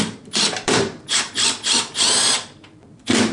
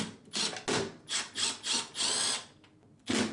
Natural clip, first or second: second